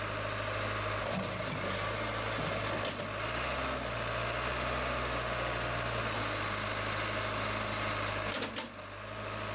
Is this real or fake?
real